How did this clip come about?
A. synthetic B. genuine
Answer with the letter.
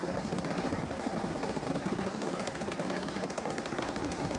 A